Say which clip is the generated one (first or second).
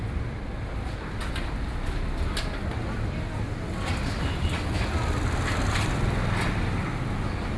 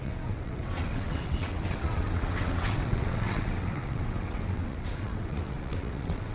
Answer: second